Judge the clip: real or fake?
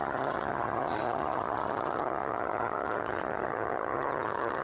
fake